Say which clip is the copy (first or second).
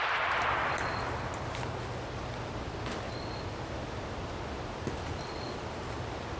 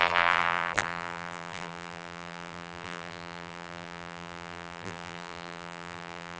second